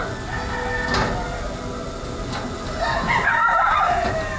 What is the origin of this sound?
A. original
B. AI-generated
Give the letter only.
A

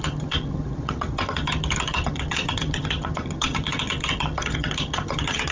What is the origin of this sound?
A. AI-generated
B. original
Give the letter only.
A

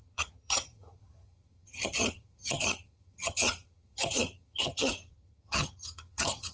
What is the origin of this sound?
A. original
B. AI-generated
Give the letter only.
B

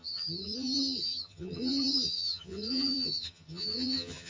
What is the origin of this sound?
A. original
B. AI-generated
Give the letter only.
B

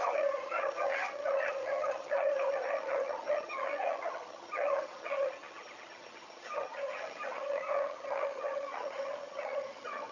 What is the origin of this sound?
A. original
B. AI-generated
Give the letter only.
B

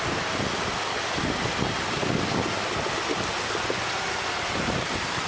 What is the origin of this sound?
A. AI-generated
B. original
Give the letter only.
B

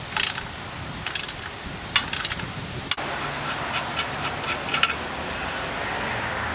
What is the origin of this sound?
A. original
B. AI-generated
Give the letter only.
A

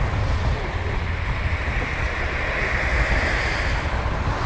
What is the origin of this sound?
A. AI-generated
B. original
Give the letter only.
B